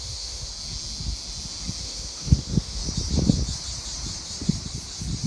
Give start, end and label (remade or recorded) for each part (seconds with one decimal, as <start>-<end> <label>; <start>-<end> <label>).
0.0-0.5 remade; 0.5-1.8 recorded; 1.8-2.8 remade; 2.8-5.3 recorded